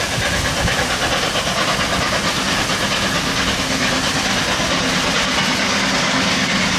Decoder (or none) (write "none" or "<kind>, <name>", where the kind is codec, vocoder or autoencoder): none